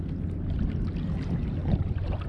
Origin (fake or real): real